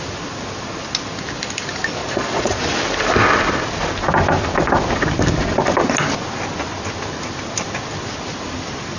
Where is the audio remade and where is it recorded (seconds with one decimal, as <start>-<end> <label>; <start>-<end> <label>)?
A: 0.0-2.0 recorded; 2.0-2.6 remade; 2.6-9.0 recorded